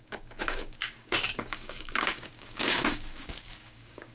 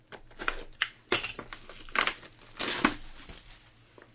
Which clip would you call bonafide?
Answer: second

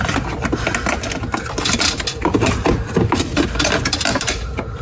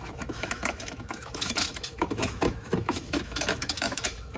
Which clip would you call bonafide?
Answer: first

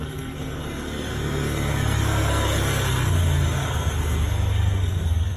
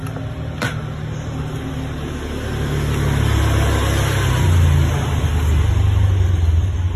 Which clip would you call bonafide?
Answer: second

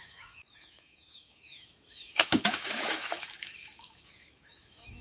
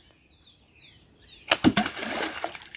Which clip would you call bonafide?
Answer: second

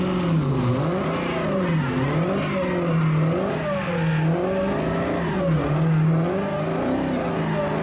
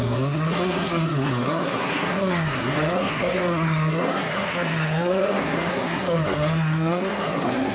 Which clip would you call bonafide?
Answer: first